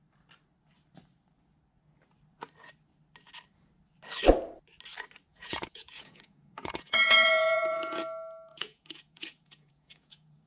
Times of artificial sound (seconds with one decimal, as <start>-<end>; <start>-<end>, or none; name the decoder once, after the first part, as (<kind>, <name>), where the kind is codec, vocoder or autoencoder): 5.3-8.0 (vocoder, Vocos); 8.5-10.5